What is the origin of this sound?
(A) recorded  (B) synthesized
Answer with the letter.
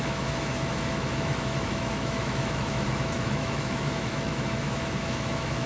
B